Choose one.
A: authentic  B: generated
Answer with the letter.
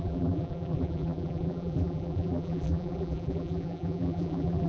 B